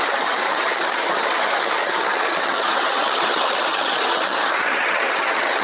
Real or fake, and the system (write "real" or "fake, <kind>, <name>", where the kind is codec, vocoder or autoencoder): fake, vocoder, HiFi-GAN